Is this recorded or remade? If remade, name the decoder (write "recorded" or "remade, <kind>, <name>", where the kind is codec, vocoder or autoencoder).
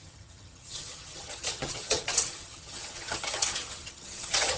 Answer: remade, vocoder, HiFi-GAN